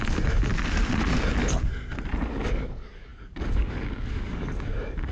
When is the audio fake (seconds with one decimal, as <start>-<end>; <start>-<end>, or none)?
0.0-0.5; 2.2-5.1